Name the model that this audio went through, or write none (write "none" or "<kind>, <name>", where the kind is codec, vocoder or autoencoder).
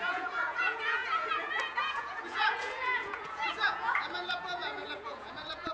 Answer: vocoder, Vocos